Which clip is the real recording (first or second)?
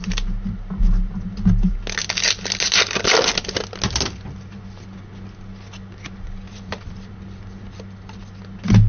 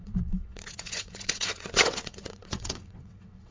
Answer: first